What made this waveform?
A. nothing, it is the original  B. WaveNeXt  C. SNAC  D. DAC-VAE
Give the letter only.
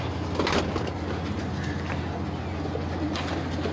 A